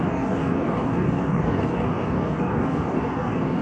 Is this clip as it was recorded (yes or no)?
no